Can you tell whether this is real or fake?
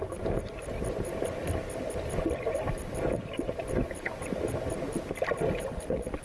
real